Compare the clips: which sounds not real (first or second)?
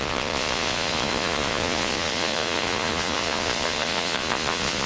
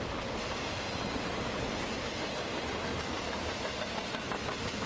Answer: first